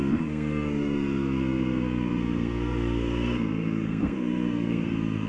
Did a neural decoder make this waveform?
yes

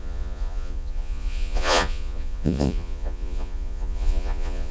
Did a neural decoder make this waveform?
yes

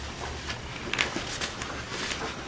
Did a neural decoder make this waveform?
no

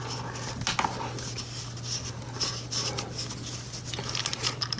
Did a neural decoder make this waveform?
no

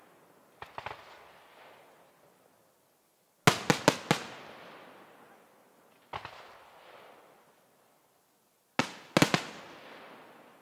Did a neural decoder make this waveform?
no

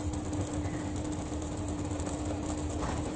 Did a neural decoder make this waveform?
no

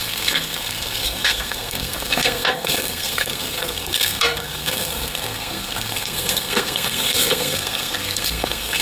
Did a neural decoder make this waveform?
yes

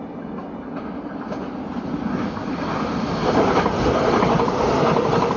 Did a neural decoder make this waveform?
no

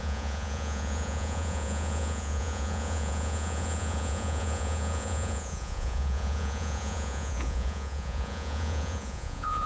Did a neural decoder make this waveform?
yes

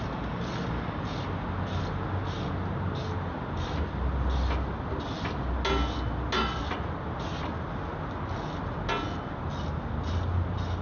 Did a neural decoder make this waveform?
no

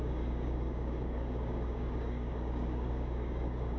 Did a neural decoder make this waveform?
yes